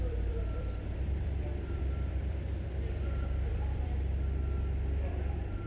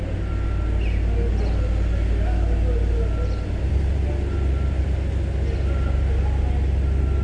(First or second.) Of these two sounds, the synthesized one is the first